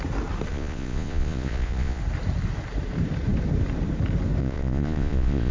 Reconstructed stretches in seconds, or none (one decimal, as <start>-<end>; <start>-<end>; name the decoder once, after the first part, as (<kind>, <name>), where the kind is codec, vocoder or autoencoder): 0.5-2.0 (vocoder, Vocos); 4.4-5.5

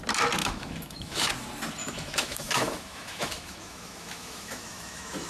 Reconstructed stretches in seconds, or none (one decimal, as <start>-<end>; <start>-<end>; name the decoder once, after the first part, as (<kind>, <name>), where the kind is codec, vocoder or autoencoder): 0.4-1.3 (autoencoder, DAC-VAE); 1.8-5.3

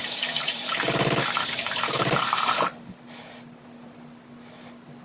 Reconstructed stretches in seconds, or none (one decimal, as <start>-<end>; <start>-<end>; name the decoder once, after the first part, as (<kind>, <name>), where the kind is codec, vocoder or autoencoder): 0.0-3.0 (vocoder, BigVGAN v2)

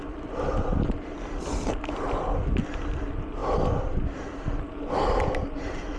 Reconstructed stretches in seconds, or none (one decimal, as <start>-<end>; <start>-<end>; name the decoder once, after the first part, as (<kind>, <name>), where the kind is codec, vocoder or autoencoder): none

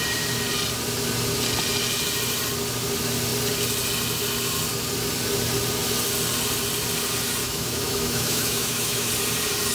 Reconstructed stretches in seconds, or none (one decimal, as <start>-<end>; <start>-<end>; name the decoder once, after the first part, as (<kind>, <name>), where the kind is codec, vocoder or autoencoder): 7.4-9.1 (autoencoder, DAC-VAE)